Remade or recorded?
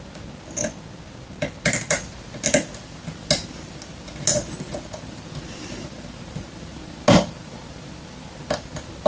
recorded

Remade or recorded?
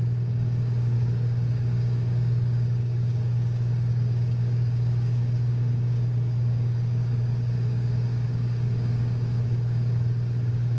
remade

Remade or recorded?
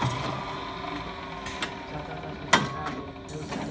recorded